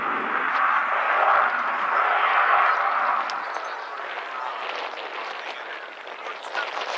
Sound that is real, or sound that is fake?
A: real